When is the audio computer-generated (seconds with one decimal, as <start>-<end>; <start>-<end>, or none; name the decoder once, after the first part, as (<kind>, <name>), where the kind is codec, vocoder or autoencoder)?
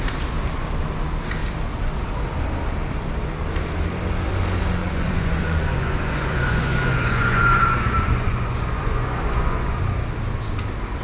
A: 4.8-9.8 (vocoder, Vocos)